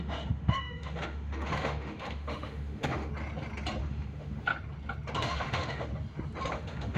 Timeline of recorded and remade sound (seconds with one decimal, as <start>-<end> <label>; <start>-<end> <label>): 0.0-3.1 remade; 3.1-3.8 recorded; 3.8-4.5 remade; 4.5-5.2 recorded; 5.2-5.9 remade; 5.9-6.5 recorded; 6.5-7.0 remade